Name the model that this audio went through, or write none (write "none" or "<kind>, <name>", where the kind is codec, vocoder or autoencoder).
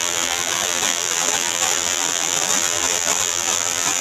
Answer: vocoder, BigVGAN v2